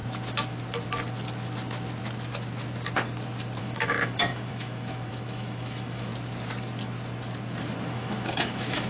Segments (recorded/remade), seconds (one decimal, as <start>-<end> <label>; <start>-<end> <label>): 0.0-3.6 recorded; 3.6-6.1 remade; 6.1-7.9 recorded; 7.9-8.9 remade